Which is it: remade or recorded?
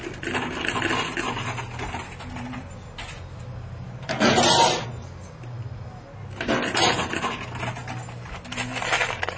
recorded